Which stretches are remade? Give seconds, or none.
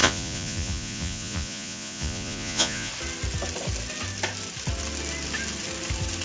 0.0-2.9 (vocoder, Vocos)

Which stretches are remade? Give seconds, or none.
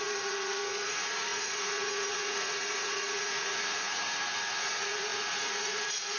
0.0-6.2 (vocoder, Vocos)